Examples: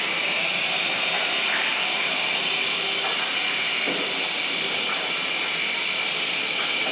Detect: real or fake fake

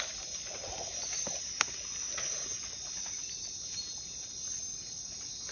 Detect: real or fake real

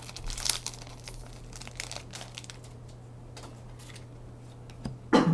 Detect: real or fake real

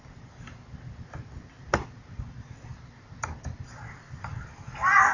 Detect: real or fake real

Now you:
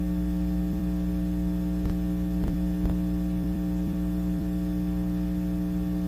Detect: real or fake fake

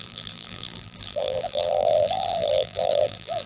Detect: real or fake fake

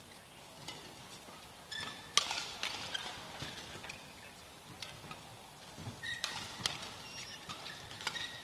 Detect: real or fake real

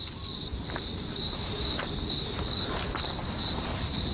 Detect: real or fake fake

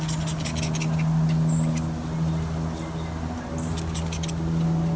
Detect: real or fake real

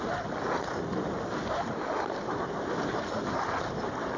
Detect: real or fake real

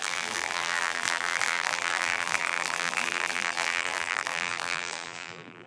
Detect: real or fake fake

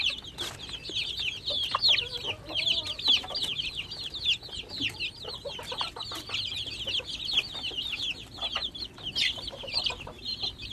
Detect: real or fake real